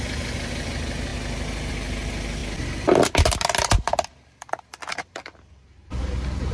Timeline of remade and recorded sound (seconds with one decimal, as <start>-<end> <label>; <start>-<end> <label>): 0.0-6.5 recorded